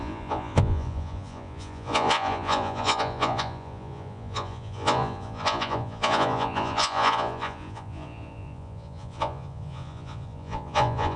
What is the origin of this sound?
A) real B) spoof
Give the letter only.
B